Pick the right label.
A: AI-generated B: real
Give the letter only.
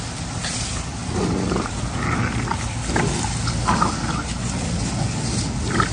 B